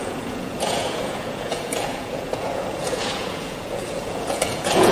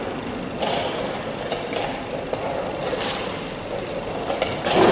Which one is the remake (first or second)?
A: first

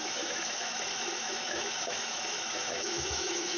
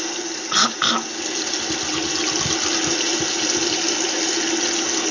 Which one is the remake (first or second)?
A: first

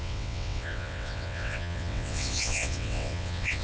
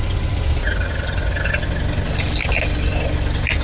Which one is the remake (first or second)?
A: first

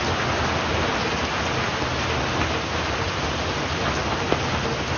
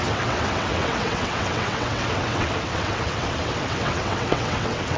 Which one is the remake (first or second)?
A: second